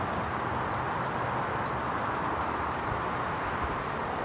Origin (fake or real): real